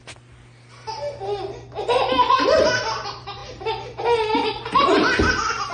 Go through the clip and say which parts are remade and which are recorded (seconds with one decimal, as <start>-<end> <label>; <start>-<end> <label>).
0.0-5.7 recorded